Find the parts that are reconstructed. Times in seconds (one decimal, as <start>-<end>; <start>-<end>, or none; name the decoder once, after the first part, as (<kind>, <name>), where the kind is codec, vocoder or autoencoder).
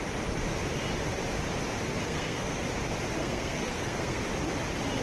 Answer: 2.0-2.6 (codec, SNAC); 3.2-4.2